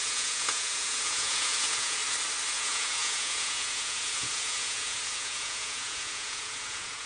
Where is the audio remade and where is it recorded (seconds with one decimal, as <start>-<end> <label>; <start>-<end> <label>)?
0.0-2.0 remade; 2.0-2.5 recorded; 2.5-7.1 remade